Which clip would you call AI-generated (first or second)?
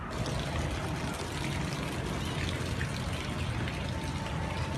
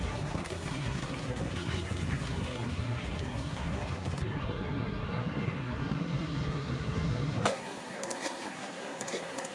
second